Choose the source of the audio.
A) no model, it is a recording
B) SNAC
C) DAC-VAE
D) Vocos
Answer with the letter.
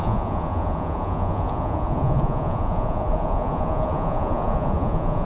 D